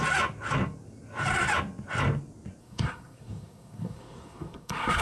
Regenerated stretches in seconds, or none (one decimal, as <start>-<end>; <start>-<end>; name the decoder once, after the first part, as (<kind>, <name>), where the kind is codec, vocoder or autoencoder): 2.6-5.0 (codec, SNAC)